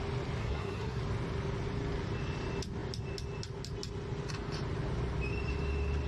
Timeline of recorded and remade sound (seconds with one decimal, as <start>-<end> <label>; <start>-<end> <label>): 0.0-0.4 recorded; 0.4-1.0 remade; 1.0-6.1 recorded